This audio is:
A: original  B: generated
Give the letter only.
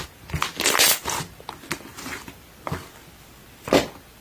A